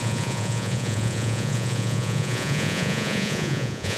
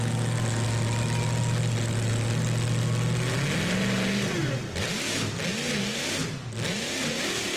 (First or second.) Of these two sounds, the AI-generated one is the first